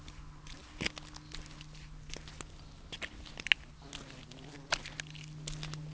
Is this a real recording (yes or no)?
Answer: yes